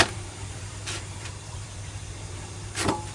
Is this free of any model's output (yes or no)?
no